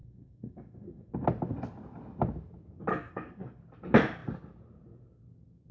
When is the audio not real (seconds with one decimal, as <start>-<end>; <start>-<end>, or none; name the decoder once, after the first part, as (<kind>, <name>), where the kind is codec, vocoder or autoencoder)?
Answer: 0.0-1.1 (codec, SNAC); 2.9-3.6